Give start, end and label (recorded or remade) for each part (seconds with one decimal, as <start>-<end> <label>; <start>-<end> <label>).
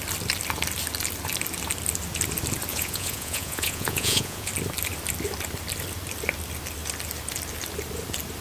0.0-2.7 recorded; 2.7-4.5 remade; 4.5-8.4 recorded